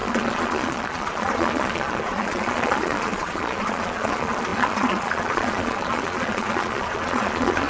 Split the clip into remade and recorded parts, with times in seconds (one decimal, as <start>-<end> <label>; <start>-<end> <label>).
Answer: 0.0-7.7 remade